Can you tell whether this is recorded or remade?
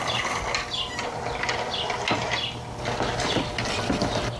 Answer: recorded